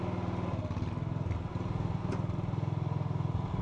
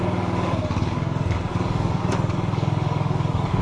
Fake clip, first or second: second